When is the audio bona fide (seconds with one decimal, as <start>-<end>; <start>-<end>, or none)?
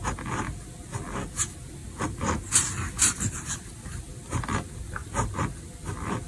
0.0-6.3